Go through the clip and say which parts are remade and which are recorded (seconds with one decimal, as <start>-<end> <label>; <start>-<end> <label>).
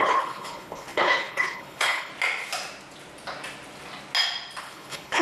0.0-2.1 remade; 2.1-4.6 recorded; 4.6-5.2 remade